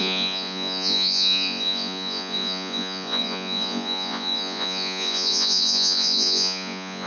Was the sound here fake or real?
fake